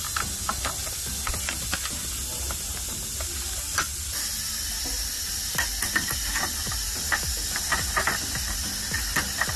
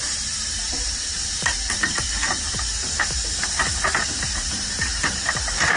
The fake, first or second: second